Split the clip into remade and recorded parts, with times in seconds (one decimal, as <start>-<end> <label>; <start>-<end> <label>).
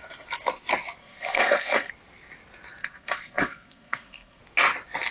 0.0-1.0 recorded; 1.0-1.9 remade; 1.9-2.8 recorded; 2.8-4.4 remade; 4.4-5.1 recorded